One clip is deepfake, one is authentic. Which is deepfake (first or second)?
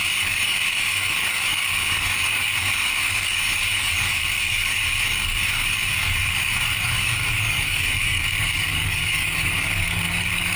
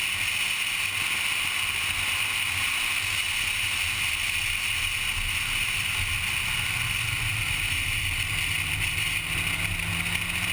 first